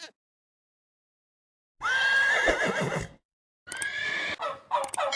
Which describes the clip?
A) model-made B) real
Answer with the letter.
B